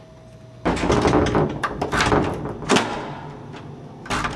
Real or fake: real